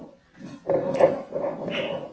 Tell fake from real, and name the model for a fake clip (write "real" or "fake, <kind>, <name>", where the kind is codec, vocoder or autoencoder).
real